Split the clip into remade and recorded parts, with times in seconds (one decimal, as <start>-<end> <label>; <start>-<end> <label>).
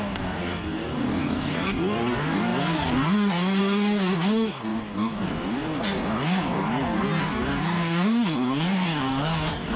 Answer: 0.0-9.8 remade